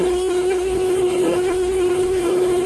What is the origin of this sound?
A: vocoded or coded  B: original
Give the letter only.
A